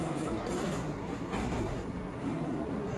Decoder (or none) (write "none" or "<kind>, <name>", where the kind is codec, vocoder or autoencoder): codec, SNAC